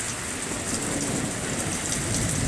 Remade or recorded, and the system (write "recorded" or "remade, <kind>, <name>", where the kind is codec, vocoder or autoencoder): recorded